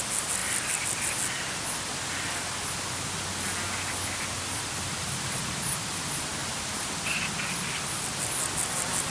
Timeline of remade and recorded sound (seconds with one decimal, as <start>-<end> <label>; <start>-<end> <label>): 0.0-9.1 recorded